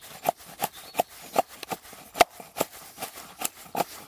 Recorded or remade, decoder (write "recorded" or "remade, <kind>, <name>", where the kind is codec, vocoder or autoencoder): recorded